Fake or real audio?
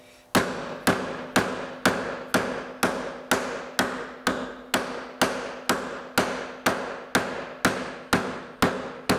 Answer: real